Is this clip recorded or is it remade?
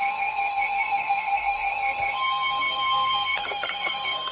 remade